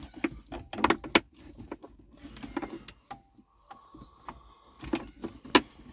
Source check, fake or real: real